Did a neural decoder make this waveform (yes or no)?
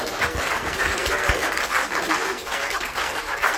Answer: yes